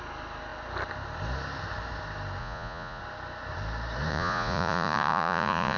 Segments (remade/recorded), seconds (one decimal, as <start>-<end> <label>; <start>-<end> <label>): 0.0-2.4 recorded; 2.4-3.0 remade; 3.0-4.1 recorded; 4.1-5.8 remade